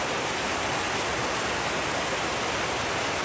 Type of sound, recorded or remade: recorded